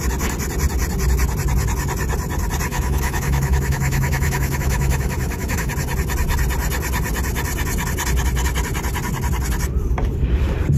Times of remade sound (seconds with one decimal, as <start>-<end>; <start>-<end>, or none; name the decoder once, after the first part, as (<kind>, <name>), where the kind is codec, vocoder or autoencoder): 2.7-5.7 (autoencoder, DAC-VAE)